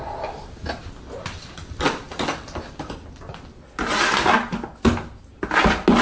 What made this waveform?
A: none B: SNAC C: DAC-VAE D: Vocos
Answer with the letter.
A